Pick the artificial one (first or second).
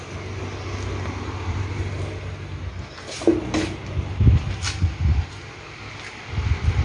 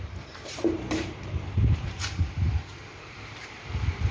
second